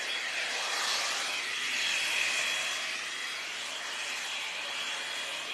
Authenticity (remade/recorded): recorded